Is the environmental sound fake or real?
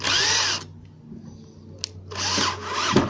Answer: real